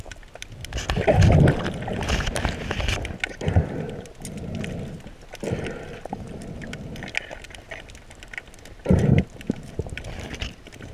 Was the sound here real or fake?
real